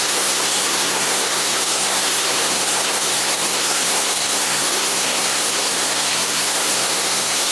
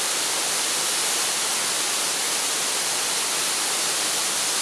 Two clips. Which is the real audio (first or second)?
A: second